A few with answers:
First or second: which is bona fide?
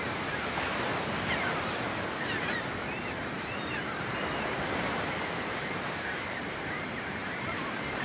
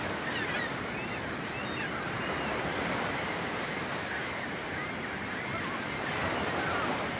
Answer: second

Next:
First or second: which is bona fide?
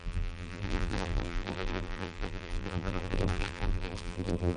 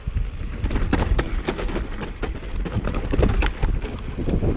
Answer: second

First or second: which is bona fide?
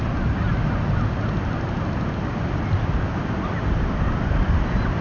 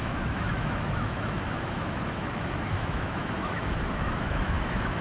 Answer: first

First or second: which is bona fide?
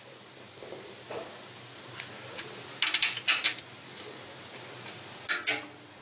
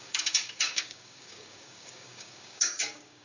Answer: first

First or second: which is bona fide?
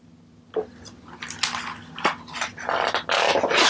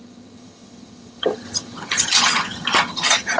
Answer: first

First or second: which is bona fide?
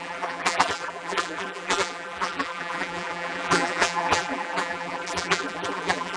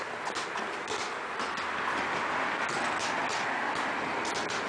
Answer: second